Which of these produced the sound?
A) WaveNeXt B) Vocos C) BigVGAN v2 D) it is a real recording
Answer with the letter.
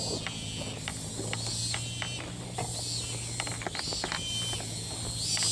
D